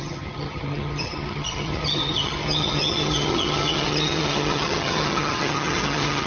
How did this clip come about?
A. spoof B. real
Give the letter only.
A